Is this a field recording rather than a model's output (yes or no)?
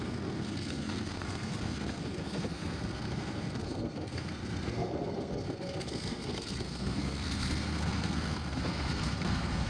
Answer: no